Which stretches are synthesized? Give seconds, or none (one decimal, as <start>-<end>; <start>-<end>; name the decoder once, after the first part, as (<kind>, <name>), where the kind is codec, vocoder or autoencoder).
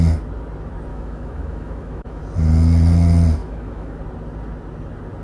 0.9-2.2 (autoencoder, DAC-VAE); 3.4-4.0